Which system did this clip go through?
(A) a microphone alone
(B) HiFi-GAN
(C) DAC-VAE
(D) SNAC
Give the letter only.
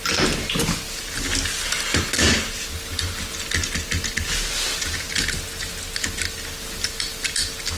A